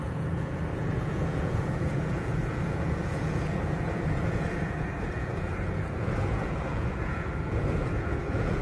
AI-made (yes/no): yes